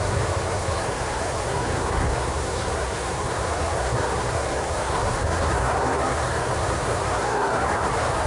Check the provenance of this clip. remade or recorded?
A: remade